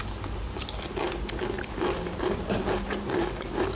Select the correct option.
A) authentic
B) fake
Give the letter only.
A